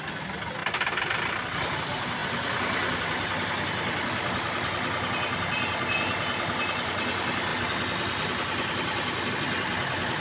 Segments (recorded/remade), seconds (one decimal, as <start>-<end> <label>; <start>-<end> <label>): 0.0-10.2 recorded